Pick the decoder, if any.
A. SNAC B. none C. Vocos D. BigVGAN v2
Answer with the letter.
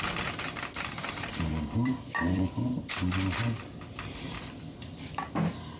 D